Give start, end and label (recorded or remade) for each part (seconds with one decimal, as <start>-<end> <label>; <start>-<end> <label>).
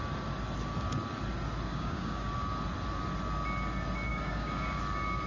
0.0-1.7 recorded; 1.7-2.3 remade; 2.3-4.1 recorded; 4.1-4.8 remade; 4.8-5.3 recorded